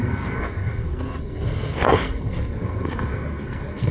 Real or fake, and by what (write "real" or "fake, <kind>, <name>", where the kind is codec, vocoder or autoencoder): fake, codec, SNAC